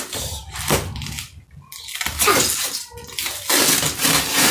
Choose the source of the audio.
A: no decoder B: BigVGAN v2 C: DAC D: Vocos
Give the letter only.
A